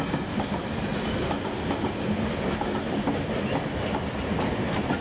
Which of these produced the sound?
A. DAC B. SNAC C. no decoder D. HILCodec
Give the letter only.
C